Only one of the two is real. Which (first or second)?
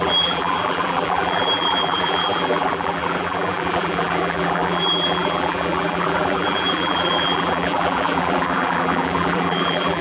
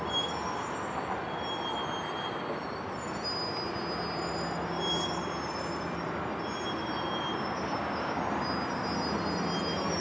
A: second